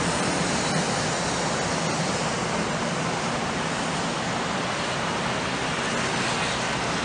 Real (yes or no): yes